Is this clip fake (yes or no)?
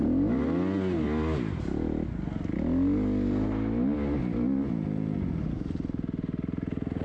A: no